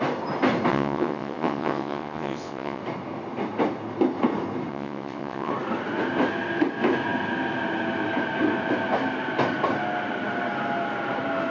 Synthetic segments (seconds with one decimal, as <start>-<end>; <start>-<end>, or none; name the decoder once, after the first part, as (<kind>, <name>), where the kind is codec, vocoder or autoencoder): 0.7-2.8 (vocoder, WaveNeXt); 4.7-5.5